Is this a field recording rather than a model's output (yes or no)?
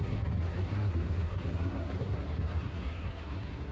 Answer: no